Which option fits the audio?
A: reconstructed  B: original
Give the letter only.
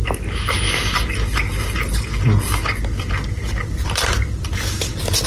B